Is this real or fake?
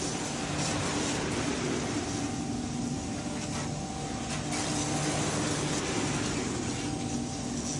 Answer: real